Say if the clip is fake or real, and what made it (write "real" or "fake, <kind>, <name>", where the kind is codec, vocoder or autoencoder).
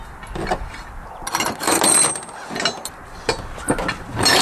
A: real